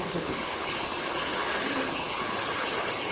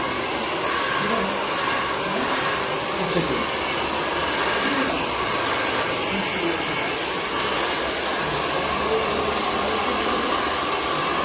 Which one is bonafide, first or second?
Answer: second